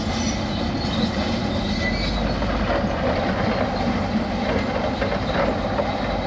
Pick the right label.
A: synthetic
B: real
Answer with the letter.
B